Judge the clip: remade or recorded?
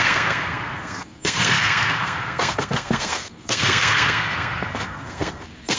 remade